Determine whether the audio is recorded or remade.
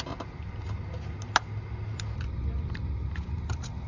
recorded